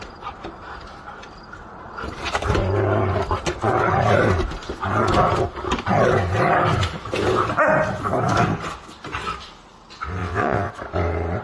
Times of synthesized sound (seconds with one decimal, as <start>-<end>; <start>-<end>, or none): 10.2-10.7